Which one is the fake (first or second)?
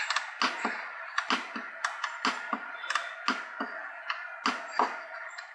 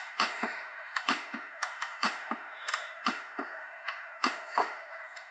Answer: second